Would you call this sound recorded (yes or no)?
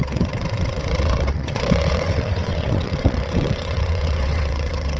no